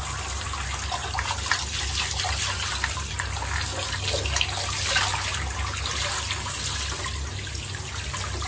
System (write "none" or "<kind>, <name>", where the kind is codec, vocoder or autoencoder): none